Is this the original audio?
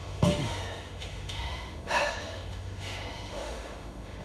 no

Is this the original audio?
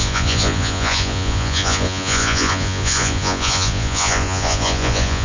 no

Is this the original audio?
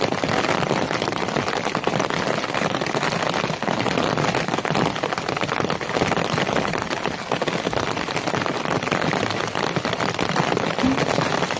yes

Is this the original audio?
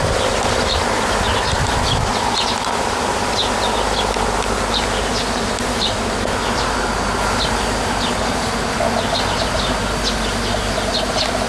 yes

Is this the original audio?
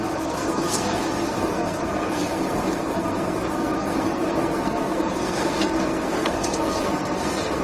no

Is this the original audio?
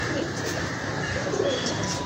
no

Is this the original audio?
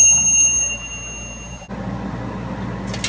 yes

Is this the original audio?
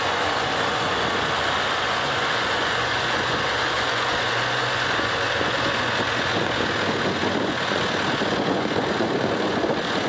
no